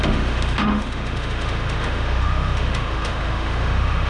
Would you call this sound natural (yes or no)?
no